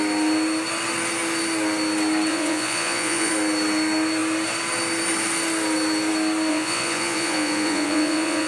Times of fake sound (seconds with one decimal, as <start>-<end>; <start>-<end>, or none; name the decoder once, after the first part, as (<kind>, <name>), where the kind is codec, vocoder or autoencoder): 2.3-3.3 (vocoder, Vocos); 6.5-8.5